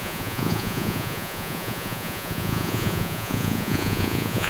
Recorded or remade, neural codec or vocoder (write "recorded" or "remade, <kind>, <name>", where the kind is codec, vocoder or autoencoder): remade, vocoder, Vocos